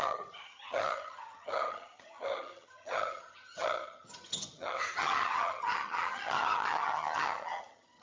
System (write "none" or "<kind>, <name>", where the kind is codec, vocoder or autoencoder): vocoder, HiFi-GAN